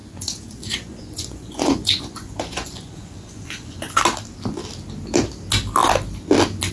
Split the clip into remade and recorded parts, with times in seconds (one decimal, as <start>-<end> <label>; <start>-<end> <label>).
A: 0.0-4.0 remade; 4.0-6.7 recorded